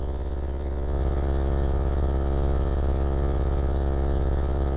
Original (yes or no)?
no